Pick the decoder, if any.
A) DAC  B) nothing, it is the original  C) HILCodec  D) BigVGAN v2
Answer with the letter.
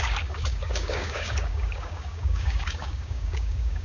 A